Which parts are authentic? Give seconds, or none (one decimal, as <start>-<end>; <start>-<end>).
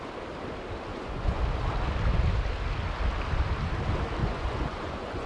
0.0-0.9; 1.4-4.2